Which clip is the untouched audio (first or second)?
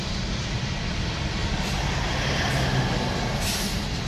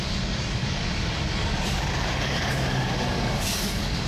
first